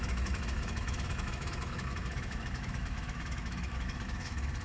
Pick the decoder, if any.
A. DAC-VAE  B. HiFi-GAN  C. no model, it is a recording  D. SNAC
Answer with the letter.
A